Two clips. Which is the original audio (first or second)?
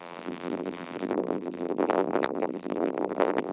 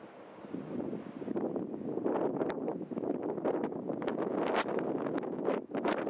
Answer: second